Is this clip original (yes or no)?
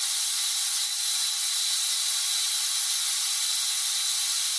yes